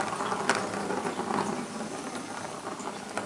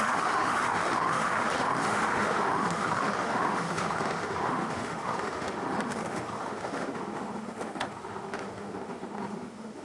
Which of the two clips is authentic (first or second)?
first